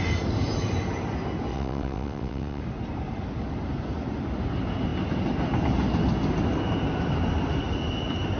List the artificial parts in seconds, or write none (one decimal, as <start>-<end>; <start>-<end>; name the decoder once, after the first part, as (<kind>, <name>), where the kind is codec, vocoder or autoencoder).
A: 1.5-2.6 (vocoder, WaveNeXt)